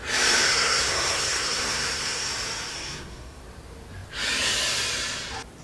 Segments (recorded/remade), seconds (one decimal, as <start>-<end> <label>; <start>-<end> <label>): 0.0-0.4 recorded; 0.4-2.3 remade; 2.3-2.7 recorded; 2.7-3.4 remade; 3.4-5.6 recorded